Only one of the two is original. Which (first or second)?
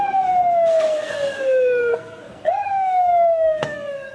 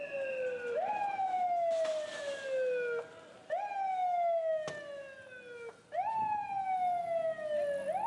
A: second